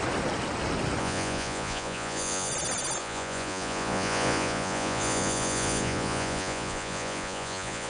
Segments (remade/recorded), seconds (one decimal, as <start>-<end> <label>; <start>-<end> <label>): 0.0-1.0 recorded; 1.0-2.5 remade; 2.5-3.0 recorded; 3.0-7.9 remade